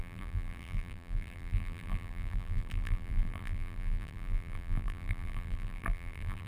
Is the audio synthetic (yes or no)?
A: yes